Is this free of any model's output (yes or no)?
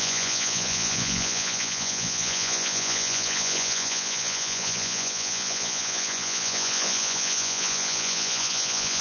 no